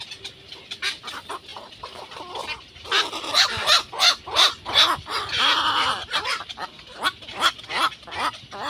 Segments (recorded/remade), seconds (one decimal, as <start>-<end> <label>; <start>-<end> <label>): 0.0-6.0 recorded; 6.0-7.5 remade; 7.5-8.7 recorded